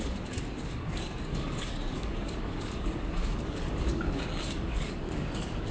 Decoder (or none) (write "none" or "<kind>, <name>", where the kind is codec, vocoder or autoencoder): codec, DAC